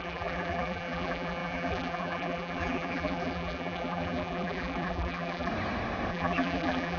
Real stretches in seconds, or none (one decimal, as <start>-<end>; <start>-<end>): 5.5-6.1